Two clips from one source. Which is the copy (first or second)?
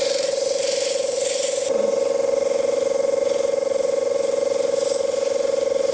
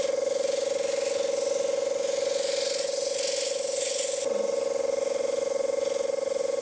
first